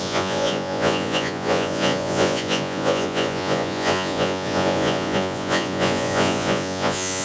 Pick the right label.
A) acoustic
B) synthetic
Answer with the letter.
B